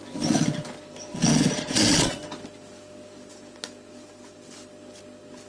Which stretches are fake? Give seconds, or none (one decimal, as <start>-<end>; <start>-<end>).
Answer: 1.1-2.2